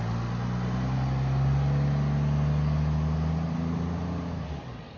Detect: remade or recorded recorded